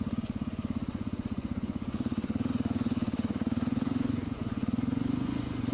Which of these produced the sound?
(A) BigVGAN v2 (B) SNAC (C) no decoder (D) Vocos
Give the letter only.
D